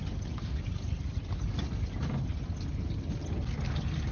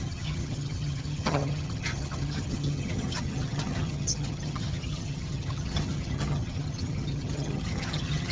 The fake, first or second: second